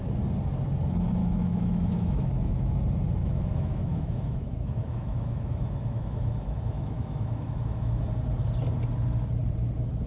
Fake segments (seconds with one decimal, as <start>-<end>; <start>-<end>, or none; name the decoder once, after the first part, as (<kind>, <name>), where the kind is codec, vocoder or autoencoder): 1.2-2.8 (autoencoder, DAC-VAE); 3.2-8.0